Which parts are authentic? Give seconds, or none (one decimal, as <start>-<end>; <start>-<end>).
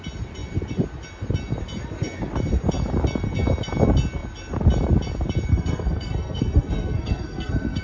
0.0-5.5